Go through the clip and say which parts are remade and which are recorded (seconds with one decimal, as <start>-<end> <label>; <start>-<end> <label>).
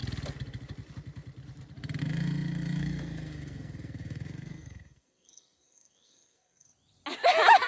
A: 0.0-2.0 recorded; 2.0-6.7 remade; 6.7-7.7 recorded